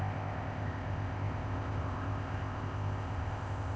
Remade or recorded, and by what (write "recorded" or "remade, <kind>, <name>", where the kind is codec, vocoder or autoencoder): remade, codec, ZipCodec